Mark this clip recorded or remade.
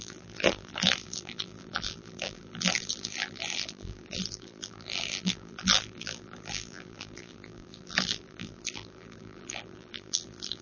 remade